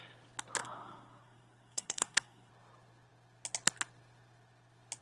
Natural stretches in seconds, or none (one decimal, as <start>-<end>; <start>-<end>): 0.0-0.6; 2.5-5.0